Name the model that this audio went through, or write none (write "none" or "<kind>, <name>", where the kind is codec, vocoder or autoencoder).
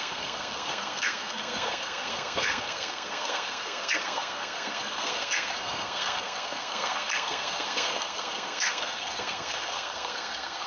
codec, SNAC